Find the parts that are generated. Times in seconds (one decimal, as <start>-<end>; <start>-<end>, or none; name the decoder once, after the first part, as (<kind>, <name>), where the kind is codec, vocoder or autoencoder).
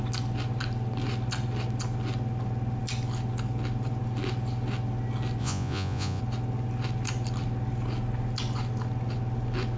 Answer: 5.4-6.2 (vocoder, Vocos)